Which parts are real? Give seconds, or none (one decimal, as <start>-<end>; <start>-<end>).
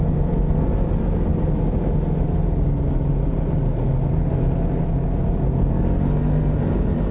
0.0-7.1